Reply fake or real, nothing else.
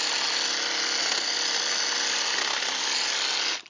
real